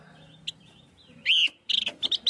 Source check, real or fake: real